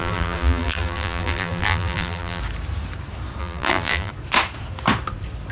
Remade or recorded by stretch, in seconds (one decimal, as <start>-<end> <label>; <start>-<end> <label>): 0.0-2.4 remade; 2.4-3.4 recorded; 3.4-4.1 remade; 4.1-5.5 recorded